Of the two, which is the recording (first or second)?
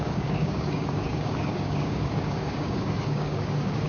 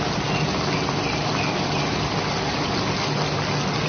second